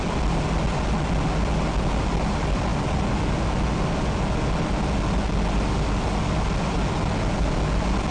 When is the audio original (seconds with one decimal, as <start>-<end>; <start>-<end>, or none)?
0.0-8.1